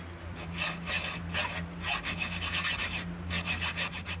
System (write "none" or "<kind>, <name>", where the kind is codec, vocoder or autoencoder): none